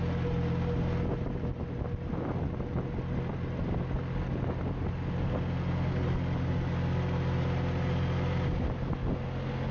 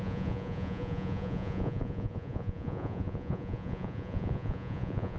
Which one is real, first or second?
first